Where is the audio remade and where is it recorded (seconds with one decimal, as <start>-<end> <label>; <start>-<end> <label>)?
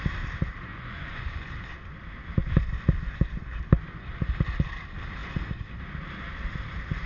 0.0-0.7 recorded; 0.7-1.5 remade; 1.5-7.1 recorded